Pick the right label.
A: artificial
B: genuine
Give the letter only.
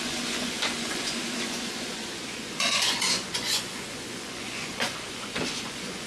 A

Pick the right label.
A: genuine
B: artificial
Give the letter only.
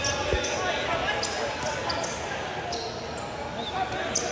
A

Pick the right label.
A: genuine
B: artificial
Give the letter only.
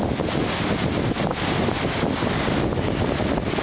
A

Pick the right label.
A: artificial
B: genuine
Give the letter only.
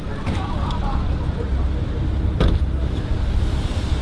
B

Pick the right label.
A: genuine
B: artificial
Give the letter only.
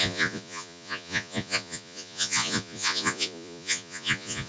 B